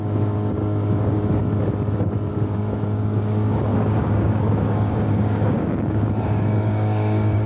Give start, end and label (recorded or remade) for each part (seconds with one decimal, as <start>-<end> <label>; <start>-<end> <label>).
0.0-1.4 remade; 1.4-2.3 recorded; 2.3-7.5 remade